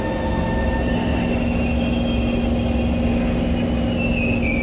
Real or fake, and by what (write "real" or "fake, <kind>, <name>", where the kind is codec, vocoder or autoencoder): real